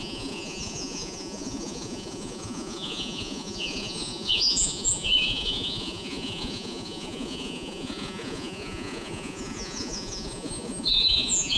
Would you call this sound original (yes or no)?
no